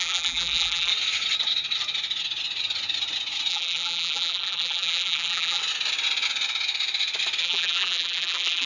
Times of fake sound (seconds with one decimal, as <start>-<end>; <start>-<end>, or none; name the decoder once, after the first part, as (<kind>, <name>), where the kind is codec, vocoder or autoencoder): 0.0-0.9 (vocoder, BigVGAN v2); 3.5-5.6; 7.4-8.7